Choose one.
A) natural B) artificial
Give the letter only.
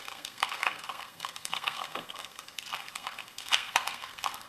B